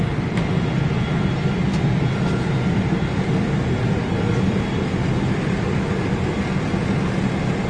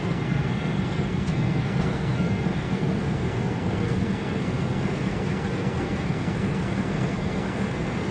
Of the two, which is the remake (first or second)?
second